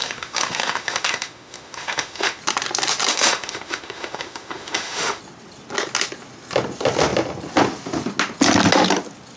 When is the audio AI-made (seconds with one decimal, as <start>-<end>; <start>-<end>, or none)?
0.0-2.4; 3.1-5.2